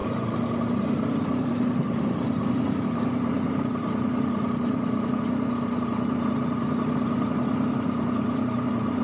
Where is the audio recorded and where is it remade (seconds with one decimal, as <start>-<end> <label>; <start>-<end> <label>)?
0.0-2.8 remade; 2.8-9.0 recorded